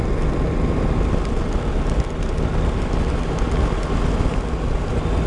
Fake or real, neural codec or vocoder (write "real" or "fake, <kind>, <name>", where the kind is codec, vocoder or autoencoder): real